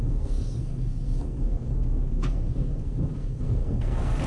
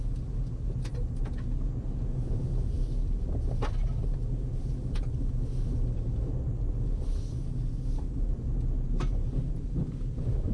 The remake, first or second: first